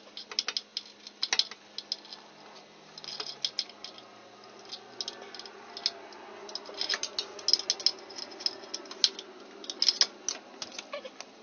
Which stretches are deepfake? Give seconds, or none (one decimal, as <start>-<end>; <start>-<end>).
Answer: none